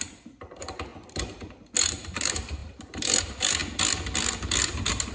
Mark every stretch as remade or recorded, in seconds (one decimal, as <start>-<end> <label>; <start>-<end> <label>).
0.0-0.9 remade; 0.9-1.9 recorded; 1.9-3.6 remade; 3.6-4.6 recorded; 4.6-5.1 remade